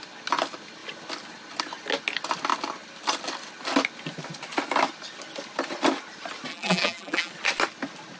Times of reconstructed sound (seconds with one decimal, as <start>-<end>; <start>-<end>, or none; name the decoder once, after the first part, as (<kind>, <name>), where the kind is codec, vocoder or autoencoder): 6.5-7.3 (vocoder, BigVGAN v2)